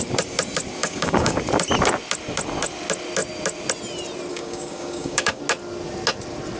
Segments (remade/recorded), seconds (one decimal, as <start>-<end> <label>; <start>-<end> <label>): 0.0-0.8 recorded; 0.8-1.4 remade; 1.4-4.3 recorded; 4.3-5.4 remade; 5.4-6.6 recorded